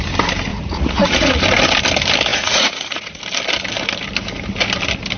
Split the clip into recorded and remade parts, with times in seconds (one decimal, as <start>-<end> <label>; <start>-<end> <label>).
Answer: 0.0-0.5 recorded; 0.5-1.4 remade; 1.4-2.3 recorded; 2.3-3.2 remade; 3.2-5.2 recorded